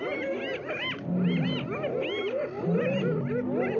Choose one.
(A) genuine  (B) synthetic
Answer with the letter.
A